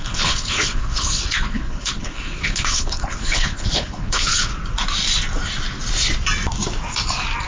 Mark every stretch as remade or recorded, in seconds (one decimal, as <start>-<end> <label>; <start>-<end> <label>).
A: 0.0-4.5 remade; 4.5-7.5 recorded